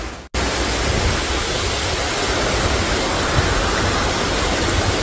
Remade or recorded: recorded